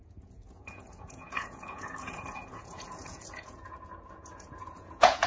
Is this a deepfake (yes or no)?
yes